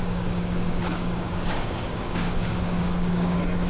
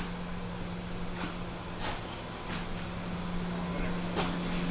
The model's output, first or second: first